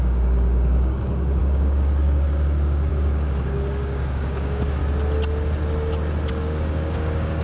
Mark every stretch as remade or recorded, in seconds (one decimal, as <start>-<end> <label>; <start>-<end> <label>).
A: 0.0-4.8 remade; 4.8-6.3 recorded; 6.3-7.4 remade

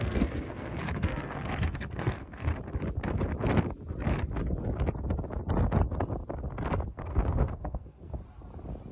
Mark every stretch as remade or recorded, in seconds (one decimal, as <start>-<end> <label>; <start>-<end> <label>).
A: 0.0-2.5 remade; 2.5-6.9 recorded; 6.9-8.2 remade; 8.2-8.9 recorded

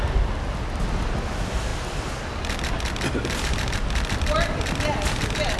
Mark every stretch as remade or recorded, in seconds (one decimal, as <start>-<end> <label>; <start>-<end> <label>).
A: 0.0-5.6 recorded

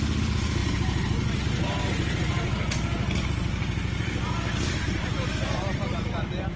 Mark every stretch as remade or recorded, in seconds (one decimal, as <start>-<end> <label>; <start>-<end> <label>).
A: 0.0-2.4 remade; 2.4-4.6 recorded; 4.6-6.6 remade

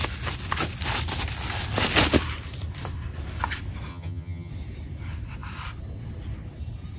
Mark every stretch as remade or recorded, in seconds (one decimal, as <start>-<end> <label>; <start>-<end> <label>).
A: 0.0-3.9 recorded; 3.9-4.5 remade; 4.5-7.0 recorded

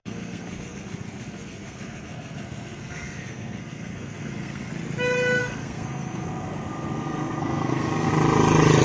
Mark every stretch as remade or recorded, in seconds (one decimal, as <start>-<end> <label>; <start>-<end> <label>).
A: 0.0-4.7 remade; 4.7-5.4 recorded; 5.4-8.1 remade; 8.1-8.8 recorded

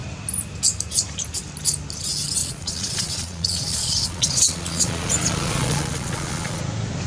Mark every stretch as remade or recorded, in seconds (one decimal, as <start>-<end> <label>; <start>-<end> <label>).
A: 0.0-2.4 recorded; 2.4-6.6 remade; 6.6-7.1 recorded